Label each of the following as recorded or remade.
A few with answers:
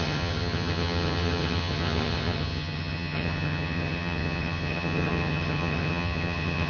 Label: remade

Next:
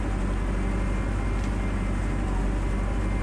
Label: recorded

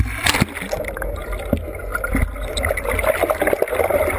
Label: recorded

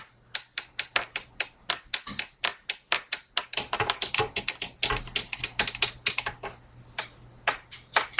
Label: recorded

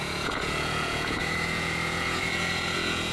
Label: remade